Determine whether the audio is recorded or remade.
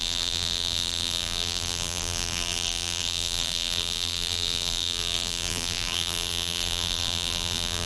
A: remade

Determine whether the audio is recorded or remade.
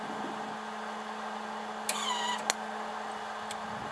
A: recorded